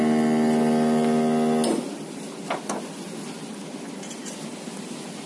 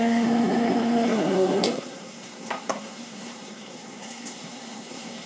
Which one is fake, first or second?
second